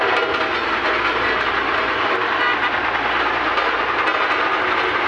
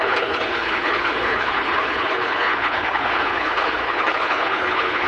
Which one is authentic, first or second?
first